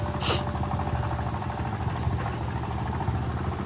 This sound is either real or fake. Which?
real